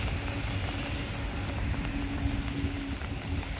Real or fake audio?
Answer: real